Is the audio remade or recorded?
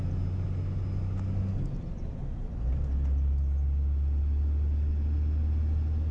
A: recorded